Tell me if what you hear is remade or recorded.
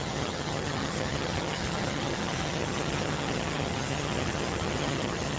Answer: remade